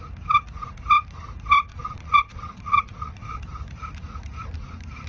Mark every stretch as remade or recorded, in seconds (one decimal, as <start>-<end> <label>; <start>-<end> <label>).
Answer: 0.0-1.7 recorded; 1.7-3.4 remade; 3.4-5.1 recorded